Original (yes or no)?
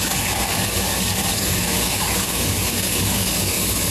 no